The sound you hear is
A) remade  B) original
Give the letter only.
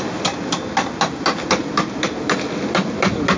B